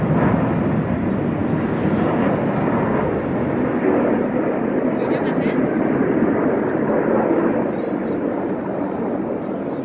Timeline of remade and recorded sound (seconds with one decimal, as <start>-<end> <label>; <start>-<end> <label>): 0.0-9.8 recorded